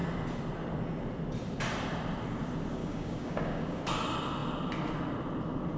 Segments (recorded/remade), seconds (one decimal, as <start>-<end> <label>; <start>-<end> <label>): 0.0-2.8 recorded; 2.8-3.8 remade; 3.8-5.8 recorded